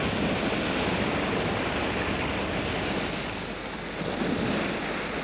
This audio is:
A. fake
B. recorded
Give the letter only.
B